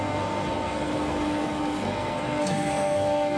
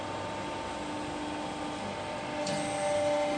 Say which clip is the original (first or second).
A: second